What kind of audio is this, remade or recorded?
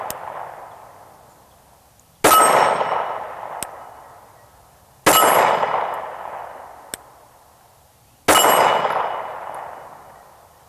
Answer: recorded